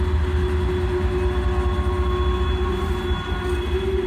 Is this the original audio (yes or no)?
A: yes